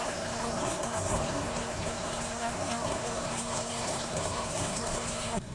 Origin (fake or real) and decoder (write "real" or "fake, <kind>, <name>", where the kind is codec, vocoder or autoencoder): fake, codec, SNAC